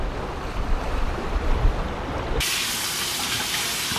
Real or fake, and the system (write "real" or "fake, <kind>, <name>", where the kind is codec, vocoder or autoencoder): real